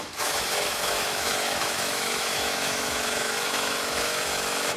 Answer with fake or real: fake